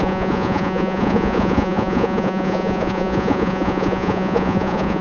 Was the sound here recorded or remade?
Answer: remade